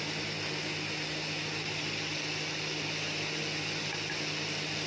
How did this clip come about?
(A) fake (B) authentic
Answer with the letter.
B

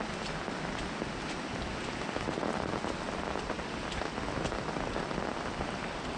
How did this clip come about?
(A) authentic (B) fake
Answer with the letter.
A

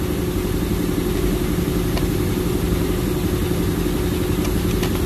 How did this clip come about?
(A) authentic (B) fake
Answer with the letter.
A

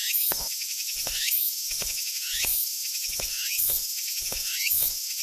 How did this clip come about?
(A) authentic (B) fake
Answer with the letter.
B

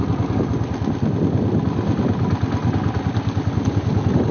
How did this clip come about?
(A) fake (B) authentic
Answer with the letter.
B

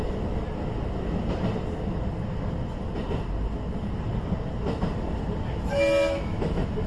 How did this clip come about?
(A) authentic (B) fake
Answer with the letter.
A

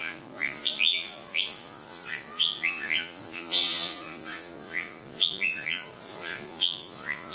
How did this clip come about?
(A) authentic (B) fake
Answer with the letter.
B